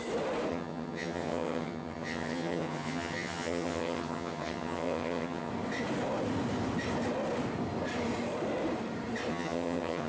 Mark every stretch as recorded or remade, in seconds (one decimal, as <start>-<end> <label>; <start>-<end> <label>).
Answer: 0.0-0.5 recorded; 0.5-5.5 remade; 5.5-9.3 recorded; 9.3-10.1 remade